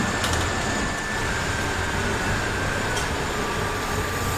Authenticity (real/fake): fake